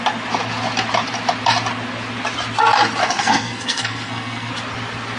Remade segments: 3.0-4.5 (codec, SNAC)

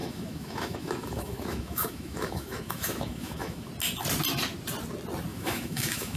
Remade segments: 0.0-3.7 (autoencoder, DAC-VAE); 5.3-6.2